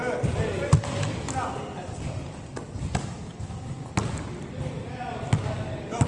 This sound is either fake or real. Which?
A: real